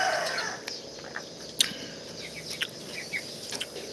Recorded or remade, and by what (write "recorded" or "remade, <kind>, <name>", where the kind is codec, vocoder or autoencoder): recorded